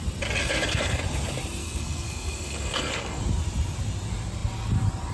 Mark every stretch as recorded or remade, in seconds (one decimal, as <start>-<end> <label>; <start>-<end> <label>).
0.0-0.4 recorded; 0.4-1.0 remade; 1.0-1.6 recorded; 1.6-3.2 remade; 3.2-5.1 recorded